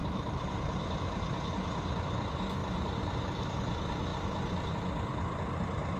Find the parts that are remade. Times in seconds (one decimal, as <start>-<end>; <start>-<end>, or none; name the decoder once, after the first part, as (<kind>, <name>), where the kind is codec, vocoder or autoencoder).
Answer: 0.0-1.5 (vocoder, BigVGAN v2); 2.6-3.5